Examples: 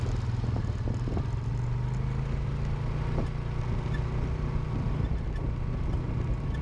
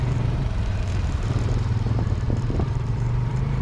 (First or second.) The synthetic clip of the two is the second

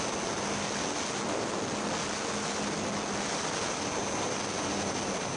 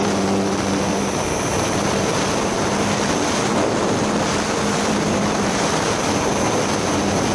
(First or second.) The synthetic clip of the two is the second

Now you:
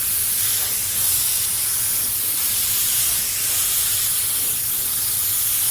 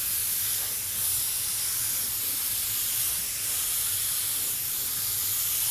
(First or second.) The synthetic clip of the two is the first